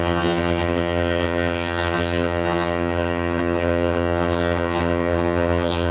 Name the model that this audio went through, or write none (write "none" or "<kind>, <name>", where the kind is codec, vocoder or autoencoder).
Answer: vocoder, HiFi-GAN